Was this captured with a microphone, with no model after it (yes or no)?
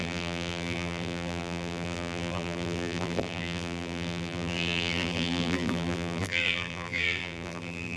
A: no